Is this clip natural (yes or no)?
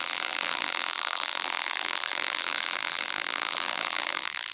no